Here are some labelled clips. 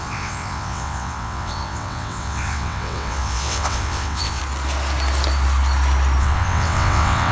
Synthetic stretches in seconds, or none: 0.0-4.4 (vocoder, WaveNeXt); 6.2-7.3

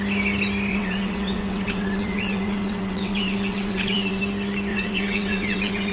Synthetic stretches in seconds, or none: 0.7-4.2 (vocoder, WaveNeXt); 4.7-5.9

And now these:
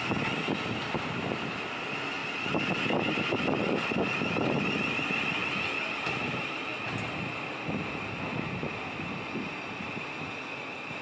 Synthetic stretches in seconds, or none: none